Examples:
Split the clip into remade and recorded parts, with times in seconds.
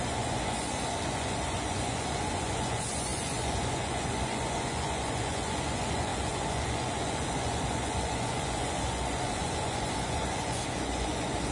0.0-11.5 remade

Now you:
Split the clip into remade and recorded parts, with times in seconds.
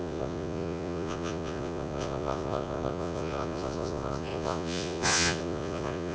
0.0-6.1 remade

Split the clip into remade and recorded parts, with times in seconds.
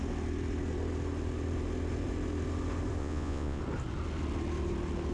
0.0-3.0 recorded; 3.0-3.6 remade; 3.6-5.1 recorded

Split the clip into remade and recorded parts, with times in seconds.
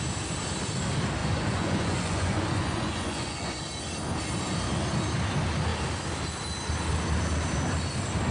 0.0-1.2 recorded; 1.2-3.6 remade; 3.6-8.3 recorded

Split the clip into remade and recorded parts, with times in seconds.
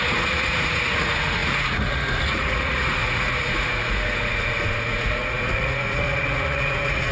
0.0-7.1 remade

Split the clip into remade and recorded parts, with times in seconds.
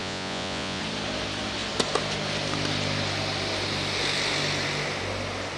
0.0-0.8 remade; 0.8-5.6 recorded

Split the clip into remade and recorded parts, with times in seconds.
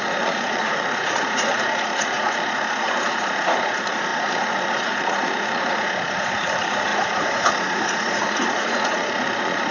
0.0-9.7 remade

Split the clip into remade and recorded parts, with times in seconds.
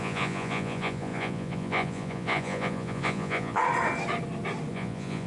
0.0-3.6 remade; 3.6-4.7 recorded; 4.7-5.3 remade